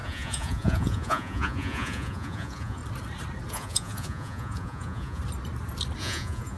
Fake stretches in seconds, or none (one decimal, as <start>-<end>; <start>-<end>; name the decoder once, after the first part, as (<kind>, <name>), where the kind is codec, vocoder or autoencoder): 0.0-2.8 (vocoder, Vocos); 3.5-5.2; 6.0-6.6